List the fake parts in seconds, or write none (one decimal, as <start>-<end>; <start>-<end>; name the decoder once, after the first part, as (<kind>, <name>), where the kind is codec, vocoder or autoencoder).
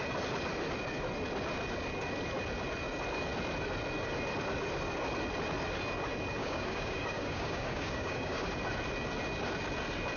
6.4-8.5 (codec, DAC)